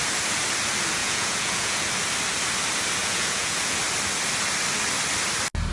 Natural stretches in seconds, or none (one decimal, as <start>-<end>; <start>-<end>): 0.0-1.0; 1.9-3.0; 3.8-5.7